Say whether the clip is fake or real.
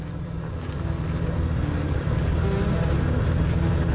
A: real